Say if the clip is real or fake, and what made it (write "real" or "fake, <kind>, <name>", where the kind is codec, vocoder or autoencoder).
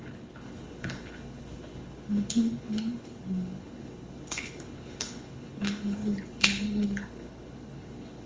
fake, codec, HILCodec